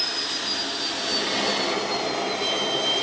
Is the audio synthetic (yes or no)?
no